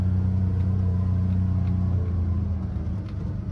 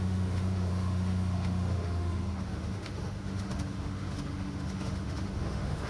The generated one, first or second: second